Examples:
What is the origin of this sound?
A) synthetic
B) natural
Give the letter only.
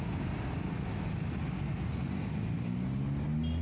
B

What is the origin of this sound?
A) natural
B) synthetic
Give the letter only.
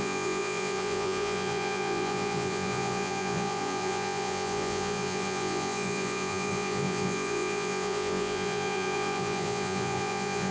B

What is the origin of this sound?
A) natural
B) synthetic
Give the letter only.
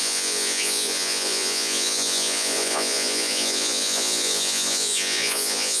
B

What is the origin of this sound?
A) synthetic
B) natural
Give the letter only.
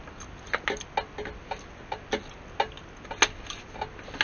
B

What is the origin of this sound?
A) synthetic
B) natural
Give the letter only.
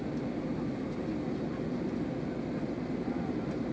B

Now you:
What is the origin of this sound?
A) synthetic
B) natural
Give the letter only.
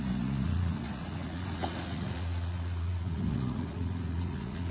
A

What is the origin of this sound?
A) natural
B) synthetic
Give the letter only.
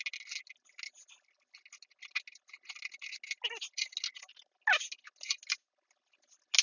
A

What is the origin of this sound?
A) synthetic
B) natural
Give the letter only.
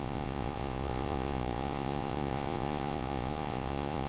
A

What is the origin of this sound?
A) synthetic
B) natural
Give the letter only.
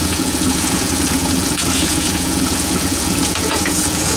A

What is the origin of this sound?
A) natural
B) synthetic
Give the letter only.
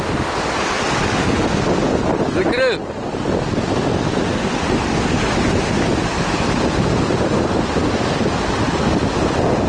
A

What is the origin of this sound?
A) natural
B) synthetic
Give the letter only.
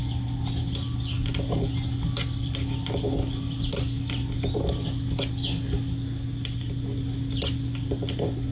A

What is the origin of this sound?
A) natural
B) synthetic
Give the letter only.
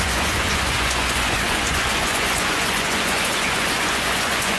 B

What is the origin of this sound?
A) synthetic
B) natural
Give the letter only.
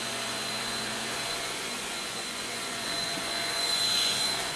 A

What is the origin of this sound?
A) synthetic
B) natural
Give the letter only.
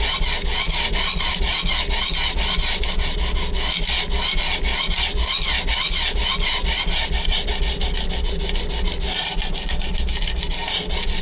B